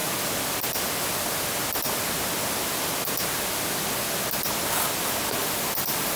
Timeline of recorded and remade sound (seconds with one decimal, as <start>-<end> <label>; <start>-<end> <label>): 0.0-5.4 recorded; 5.4-6.2 remade